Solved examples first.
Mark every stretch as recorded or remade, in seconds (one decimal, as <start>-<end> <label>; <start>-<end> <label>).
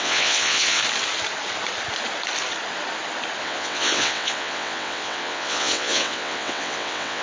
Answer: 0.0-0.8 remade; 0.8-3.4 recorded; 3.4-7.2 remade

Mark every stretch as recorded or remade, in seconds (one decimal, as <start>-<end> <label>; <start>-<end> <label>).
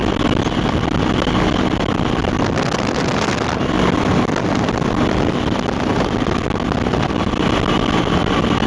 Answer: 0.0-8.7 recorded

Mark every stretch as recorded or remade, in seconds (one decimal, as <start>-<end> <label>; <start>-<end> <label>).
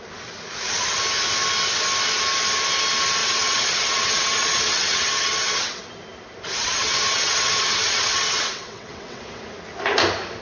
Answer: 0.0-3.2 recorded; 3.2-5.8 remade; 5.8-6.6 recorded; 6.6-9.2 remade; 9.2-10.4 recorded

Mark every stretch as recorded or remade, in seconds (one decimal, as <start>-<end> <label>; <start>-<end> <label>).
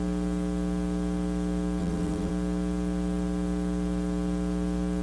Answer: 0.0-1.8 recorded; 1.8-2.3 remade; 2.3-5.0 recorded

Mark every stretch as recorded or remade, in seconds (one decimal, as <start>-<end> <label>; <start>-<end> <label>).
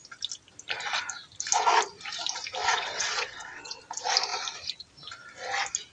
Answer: 0.0-2.6 recorded; 2.6-3.8 remade; 3.8-5.9 recorded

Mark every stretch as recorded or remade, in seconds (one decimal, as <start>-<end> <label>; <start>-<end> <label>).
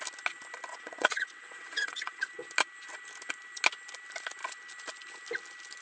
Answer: 0.0-0.7 recorded; 0.7-2.3 remade; 2.3-5.8 recorded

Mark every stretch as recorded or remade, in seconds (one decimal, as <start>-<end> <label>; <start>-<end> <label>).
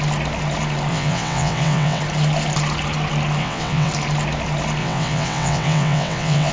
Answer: 0.0-0.9 recorded; 0.9-2.0 remade; 2.0-3.4 recorded; 3.4-3.9 remade; 3.9-4.8 recorded; 4.8-6.5 remade